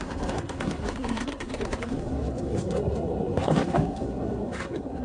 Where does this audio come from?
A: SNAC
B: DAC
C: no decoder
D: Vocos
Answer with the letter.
A